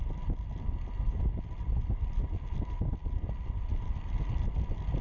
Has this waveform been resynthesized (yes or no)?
no